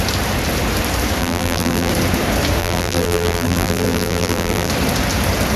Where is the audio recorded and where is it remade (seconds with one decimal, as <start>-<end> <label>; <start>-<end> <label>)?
0.0-1.2 recorded; 1.2-1.9 remade; 1.9-2.6 recorded; 2.6-4.7 remade; 4.7-5.6 recorded